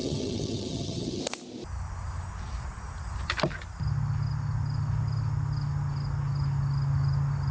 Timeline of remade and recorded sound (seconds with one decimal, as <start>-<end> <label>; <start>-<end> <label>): 0.0-1.2 remade; 1.2-7.5 recorded